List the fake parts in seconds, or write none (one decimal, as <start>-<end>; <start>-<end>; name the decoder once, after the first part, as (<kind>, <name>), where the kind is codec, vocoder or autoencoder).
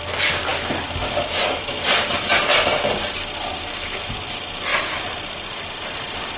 none